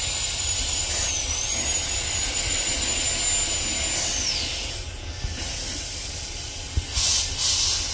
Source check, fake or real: real